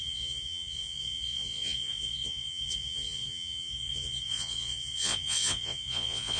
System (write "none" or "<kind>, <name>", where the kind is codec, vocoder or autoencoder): vocoder, Vocos